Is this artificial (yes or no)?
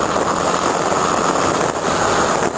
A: no